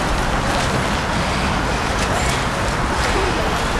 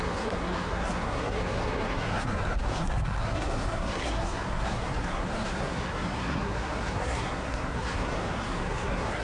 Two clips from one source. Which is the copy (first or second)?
second